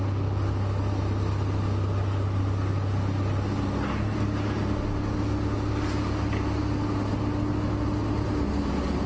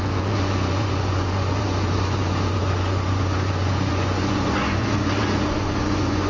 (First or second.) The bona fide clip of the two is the first